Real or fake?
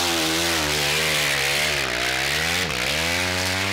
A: real